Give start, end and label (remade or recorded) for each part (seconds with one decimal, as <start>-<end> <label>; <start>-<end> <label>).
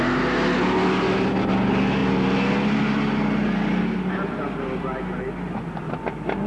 0.0-6.5 recorded